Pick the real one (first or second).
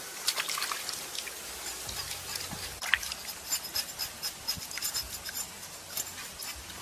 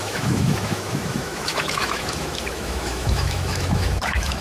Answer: first